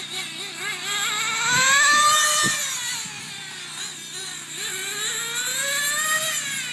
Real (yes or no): yes